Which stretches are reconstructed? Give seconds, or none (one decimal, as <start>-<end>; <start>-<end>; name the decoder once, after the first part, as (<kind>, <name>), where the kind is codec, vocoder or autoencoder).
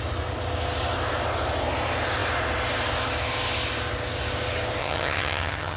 4.8-5.8 (vocoder, HiFi-GAN)